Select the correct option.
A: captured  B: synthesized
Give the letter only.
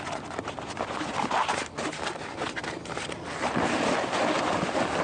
A